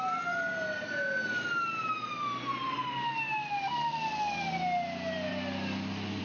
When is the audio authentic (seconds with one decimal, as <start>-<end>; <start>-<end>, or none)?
0.0-6.2